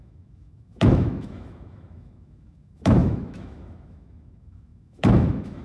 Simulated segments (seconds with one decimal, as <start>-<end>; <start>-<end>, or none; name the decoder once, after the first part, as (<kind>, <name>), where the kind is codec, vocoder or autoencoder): 0.0-5.6 (autoencoder, DAC-VAE)